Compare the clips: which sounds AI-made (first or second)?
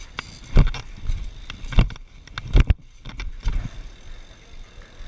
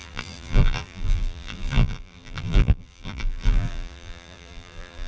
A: second